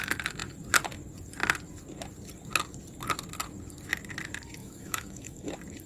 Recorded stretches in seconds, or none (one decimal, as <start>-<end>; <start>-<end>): 0.0-4.6; 5.5-5.9